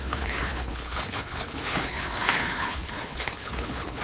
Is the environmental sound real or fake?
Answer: fake